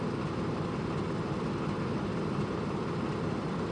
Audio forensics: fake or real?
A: real